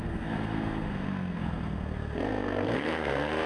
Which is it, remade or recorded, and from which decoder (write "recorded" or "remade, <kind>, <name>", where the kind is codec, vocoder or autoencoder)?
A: remade, codec, SNAC